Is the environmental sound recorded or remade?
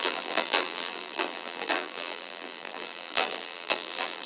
remade